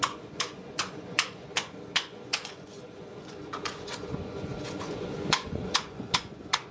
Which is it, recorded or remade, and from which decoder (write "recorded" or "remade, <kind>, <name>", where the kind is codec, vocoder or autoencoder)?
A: remade, vocoder, Vocos